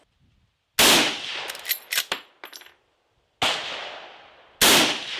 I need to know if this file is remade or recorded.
recorded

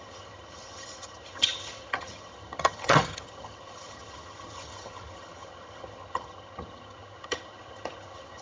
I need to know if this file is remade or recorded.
remade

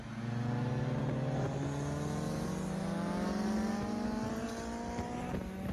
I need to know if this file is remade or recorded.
recorded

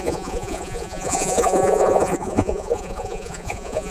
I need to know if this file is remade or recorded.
remade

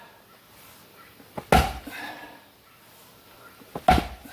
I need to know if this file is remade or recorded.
recorded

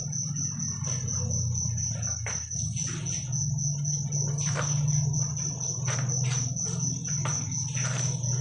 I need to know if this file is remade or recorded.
recorded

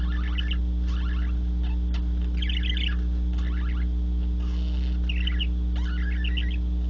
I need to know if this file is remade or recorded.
recorded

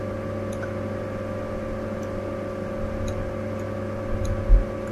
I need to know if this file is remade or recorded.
recorded